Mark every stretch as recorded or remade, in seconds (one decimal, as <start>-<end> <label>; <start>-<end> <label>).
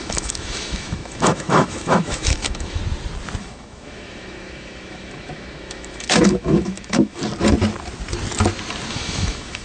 0.0-2.8 remade; 2.8-3.4 recorded; 3.4-7.2 remade; 7.2-8.9 recorded; 8.9-9.6 remade